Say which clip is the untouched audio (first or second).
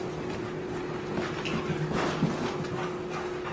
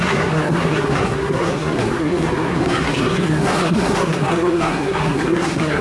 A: first